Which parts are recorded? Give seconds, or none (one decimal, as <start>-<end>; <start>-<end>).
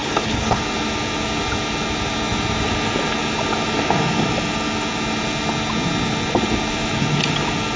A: 0.6-7.8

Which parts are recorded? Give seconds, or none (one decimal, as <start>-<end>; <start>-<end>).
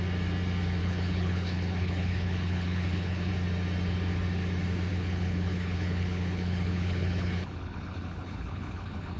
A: 0.0-0.8; 3.3-4.9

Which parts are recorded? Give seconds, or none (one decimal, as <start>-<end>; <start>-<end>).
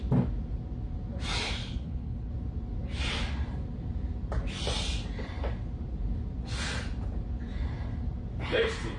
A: 0.0-1.6; 2.3-9.0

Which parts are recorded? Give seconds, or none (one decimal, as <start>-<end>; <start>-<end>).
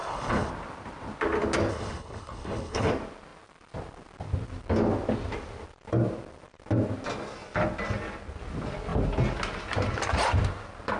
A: 0.5-1.7; 2.9-11.0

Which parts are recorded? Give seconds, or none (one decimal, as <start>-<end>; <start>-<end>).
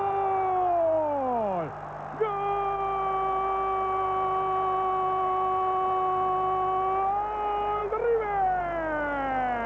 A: 0.0-9.7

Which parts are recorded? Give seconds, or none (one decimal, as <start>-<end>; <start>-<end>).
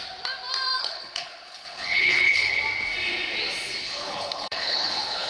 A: 0.0-0.8; 2.6-3.8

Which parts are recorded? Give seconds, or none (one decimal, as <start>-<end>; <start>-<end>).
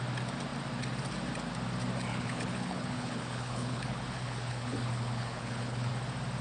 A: 0.0-2.1; 5.9-6.4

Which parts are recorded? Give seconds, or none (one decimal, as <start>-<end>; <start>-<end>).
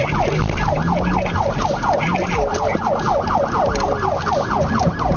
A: 0.0-5.2